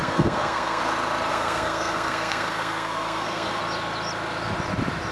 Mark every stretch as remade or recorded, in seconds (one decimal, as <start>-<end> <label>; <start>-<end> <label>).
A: 0.0-0.8 remade; 0.8-1.3 recorded; 1.3-3.6 remade; 3.6-5.1 recorded